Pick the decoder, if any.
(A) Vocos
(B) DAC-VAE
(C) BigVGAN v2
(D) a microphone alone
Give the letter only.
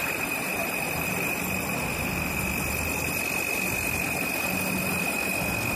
C